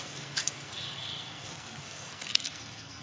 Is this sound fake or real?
fake